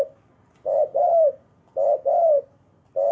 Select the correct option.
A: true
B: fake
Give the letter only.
A